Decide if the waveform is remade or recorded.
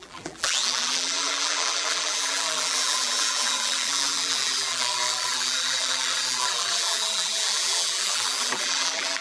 remade